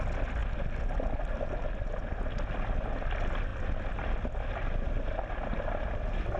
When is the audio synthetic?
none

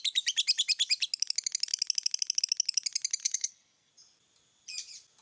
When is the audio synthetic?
3.2-3.9 (codec, SNAC)

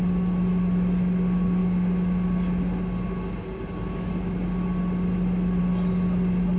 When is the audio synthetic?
none

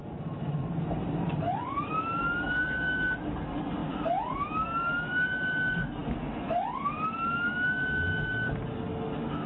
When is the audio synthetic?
0.0-1.9 (vocoder, BigVGAN v2); 3.8-4.5

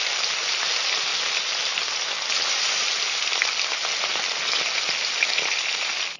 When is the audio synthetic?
none

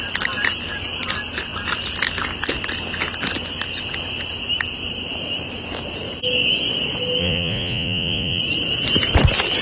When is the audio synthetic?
7.2-8.4 (vocoder, Vocos)

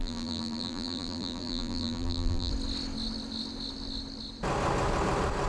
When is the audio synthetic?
0.0-2.5 (vocoder, BigVGAN v2)

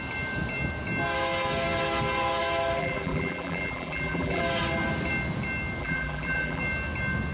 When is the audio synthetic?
2.8-4.4 (vocoder, BigVGAN v2); 5.8-6.6